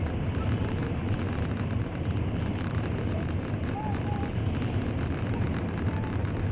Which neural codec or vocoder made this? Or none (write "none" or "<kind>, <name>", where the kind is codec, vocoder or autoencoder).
vocoder, BigVGAN v2